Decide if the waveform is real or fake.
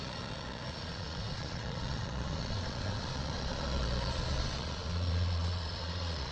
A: fake